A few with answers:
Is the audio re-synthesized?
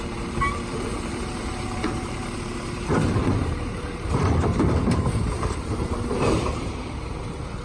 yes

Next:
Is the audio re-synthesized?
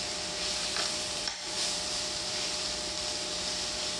yes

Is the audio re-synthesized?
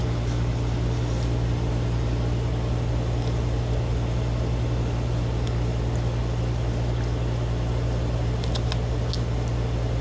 no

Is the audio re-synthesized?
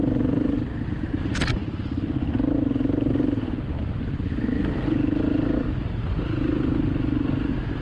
no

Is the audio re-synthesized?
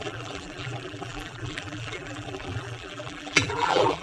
yes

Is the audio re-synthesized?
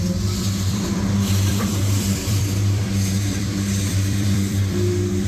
yes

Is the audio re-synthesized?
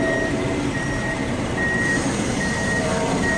yes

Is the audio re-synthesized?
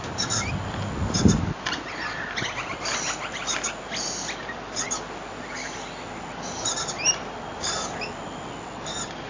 no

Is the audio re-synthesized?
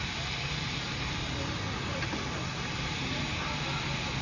no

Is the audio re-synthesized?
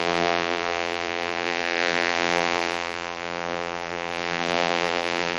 yes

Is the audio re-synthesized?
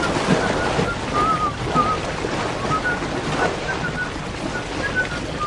no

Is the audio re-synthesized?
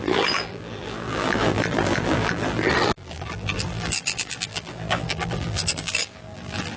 yes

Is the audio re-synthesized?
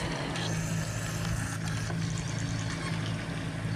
no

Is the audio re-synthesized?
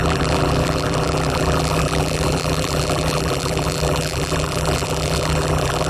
yes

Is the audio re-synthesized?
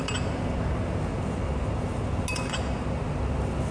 no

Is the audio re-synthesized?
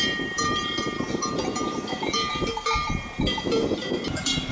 yes